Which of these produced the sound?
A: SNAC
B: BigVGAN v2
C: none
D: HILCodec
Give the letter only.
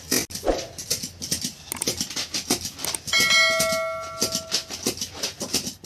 C